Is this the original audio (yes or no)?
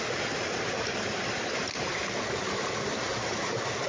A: yes